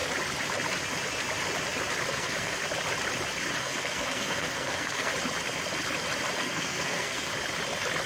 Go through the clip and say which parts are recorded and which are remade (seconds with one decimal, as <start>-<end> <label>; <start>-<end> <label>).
0.0-2.1 recorded; 2.1-2.6 remade; 2.6-3.6 recorded; 3.6-5.1 remade; 5.1-6.4 recorded; 6.4-7.3 remade; 7.3-8.1 recorded